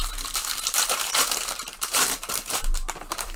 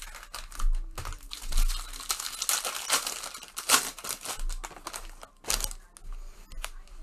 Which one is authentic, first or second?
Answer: second